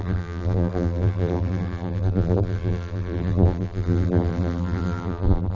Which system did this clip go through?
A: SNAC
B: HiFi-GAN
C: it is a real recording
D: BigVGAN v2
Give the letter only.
D